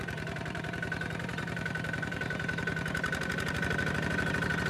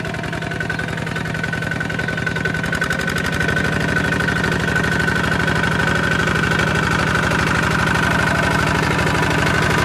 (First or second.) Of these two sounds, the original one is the second